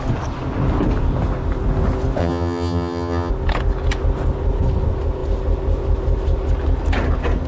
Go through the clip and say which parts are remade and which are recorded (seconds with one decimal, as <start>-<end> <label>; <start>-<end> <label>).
0.0-2.2 recorded; 2.2-3.3 remade; 3.3-7.5 recorded